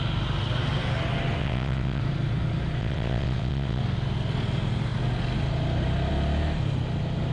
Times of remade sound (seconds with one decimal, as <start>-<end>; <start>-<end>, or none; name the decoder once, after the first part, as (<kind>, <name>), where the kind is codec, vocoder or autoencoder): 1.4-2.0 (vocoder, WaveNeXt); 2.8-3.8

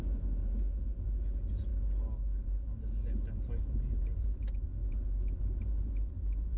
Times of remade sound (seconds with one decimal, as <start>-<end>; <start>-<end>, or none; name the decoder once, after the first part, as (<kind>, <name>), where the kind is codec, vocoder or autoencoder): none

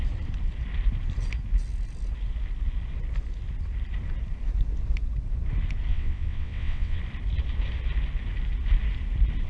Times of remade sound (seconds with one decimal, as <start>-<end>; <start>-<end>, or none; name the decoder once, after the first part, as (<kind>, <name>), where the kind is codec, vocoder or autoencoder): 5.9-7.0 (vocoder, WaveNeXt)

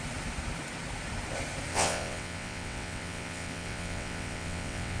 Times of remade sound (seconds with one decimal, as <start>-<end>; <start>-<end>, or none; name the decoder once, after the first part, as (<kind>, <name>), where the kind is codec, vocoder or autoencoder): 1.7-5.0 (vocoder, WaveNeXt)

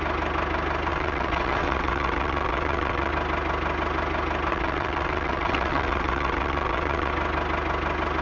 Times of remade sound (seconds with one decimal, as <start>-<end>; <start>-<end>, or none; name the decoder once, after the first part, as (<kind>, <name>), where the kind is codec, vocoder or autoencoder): 0.9-3.1 (vocoder, WaveNeXt); 4.5-7.1